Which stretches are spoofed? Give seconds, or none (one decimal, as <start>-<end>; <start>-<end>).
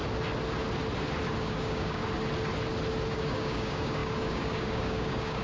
1.4-2.0; 3.1-5.4